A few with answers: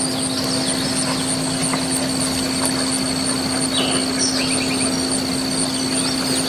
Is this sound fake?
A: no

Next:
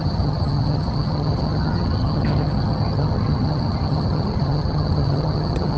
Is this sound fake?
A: yes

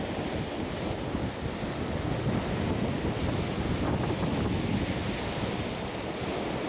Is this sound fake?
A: no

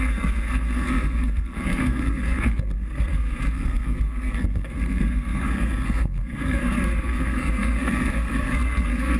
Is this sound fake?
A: yes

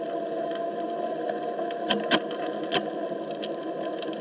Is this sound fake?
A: no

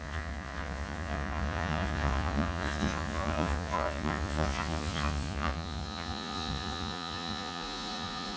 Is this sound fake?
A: yes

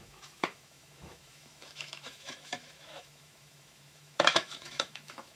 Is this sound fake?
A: yes